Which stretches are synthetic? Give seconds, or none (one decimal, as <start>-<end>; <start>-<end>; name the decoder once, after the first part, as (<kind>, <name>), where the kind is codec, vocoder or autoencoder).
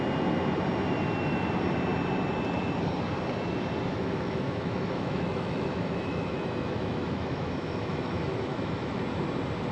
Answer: 3.9-9.0 (autoencoder, DAC-VAE)